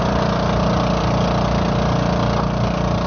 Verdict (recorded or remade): recorded